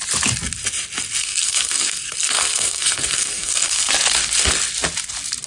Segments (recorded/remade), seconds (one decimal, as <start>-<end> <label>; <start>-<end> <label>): 0.0-1.2 recorded; 1.2-3.9 remade; 3.9-5.5 recorded